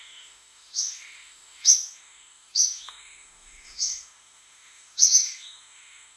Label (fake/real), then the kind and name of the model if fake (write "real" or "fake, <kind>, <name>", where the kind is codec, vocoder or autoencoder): fake, autoencoder, DAC-VAE